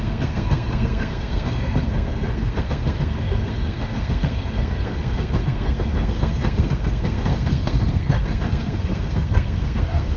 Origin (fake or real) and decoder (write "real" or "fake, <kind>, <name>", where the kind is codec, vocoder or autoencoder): fake, codec, SNAC